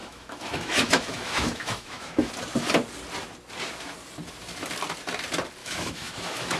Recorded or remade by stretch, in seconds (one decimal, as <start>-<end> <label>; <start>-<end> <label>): 0.0-2.3 remade; 2.3-5.6 recorded; 5.6-6.6 remade